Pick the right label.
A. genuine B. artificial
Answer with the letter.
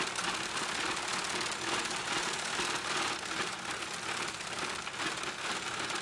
A